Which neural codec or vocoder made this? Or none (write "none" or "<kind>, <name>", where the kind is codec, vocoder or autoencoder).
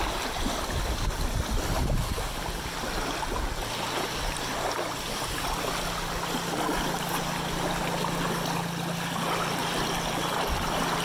none